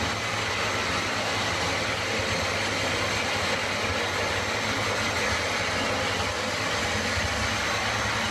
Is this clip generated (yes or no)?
no